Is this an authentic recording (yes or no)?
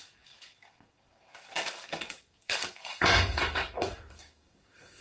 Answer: no